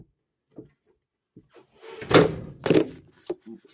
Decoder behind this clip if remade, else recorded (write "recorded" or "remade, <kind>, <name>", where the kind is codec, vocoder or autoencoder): recorded